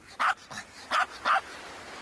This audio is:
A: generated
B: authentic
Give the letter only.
B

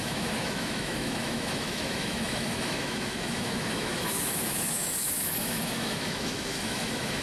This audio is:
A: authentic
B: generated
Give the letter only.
B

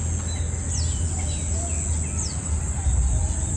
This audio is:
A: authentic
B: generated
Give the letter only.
A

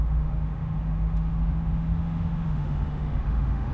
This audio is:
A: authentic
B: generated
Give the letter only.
B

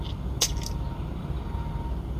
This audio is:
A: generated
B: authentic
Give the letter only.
B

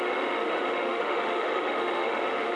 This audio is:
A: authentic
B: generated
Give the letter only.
B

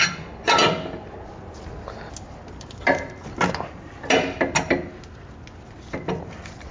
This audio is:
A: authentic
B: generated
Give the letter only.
A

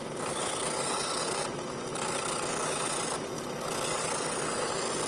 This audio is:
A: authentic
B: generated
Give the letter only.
A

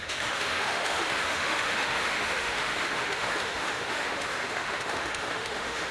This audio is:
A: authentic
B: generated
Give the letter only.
B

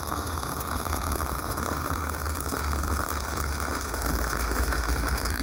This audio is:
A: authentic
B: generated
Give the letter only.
B